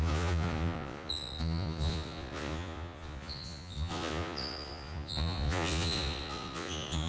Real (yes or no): no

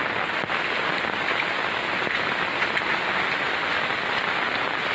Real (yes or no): yes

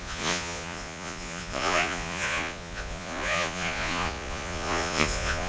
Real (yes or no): no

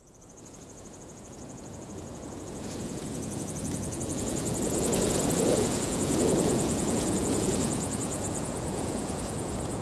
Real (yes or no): no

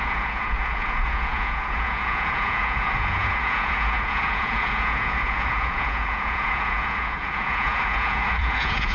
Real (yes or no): no